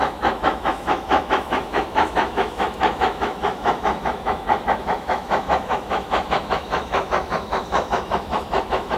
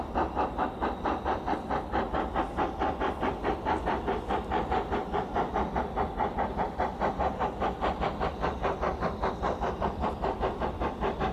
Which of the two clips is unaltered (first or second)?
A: second